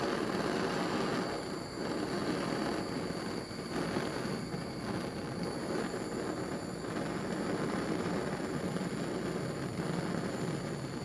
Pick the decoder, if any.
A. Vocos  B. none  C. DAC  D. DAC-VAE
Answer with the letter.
B